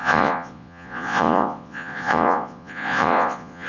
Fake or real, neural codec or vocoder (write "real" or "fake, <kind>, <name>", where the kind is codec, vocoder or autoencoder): fake, vocoder, Vocos